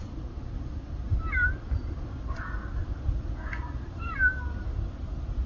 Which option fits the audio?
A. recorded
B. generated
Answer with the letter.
A